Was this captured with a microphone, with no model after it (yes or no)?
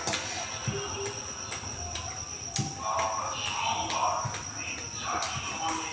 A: yes